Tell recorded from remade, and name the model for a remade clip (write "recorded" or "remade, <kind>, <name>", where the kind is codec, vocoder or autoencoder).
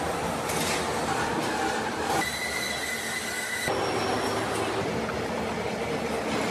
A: recorded